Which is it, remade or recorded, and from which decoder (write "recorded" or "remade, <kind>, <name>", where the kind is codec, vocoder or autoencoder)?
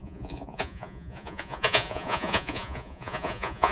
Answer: remade, vocoder, Vocos